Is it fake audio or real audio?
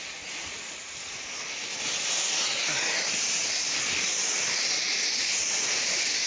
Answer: real